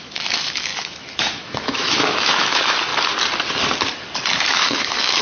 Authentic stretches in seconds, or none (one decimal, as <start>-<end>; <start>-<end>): 2.9-4.5